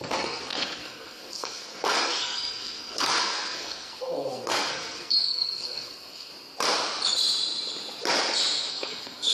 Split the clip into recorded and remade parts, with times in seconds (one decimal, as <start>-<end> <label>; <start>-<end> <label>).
0.0-6.3 remade; 6.3-8.7 recorded; 8.7-9.3 remade